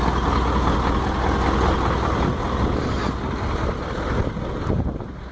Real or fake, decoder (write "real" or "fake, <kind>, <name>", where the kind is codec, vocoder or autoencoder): real